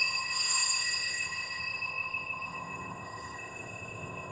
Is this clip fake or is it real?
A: fake